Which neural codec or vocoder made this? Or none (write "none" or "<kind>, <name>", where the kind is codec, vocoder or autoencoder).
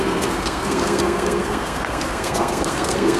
codec, SNAC